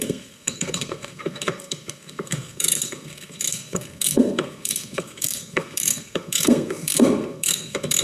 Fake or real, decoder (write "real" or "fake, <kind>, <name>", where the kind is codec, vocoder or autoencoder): fake, codec, SNAC